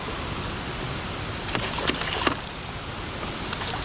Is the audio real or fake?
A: real